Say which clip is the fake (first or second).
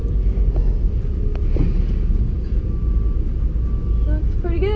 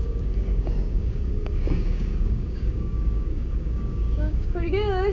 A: second